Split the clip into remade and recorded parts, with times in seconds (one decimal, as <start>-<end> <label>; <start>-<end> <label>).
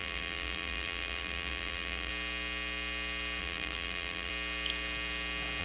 0.0-2.1 remade; 2.1-3.4 recorded; 3.4-4.3 remade; 4.3-5.6 recorded